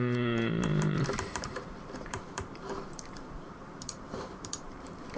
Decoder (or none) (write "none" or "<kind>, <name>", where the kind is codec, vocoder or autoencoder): vocoder, BigVGAN v2